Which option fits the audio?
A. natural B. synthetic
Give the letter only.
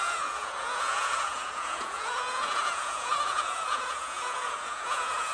B